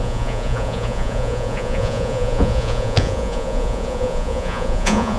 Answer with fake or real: fake